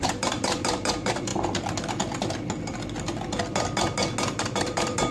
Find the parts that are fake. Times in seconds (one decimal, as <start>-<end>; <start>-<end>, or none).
0.0-1.3; 4.4-5.1

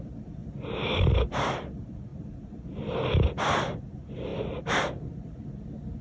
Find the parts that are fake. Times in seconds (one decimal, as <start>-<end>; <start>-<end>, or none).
0.0-6.0

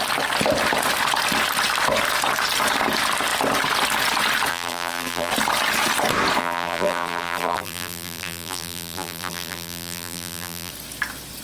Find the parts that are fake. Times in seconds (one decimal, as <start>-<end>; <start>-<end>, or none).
4.5-5.3; 6.4-10.7

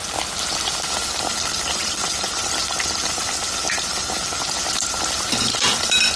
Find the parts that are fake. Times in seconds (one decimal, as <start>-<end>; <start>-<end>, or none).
1.3-5.0